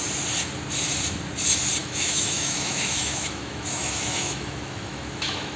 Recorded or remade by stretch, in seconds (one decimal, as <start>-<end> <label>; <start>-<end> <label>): 0.0-1.8 recorded; 1.8-5.6 remade